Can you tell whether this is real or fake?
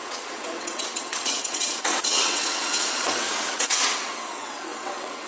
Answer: fake